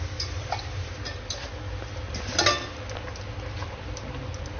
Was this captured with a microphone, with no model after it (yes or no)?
yes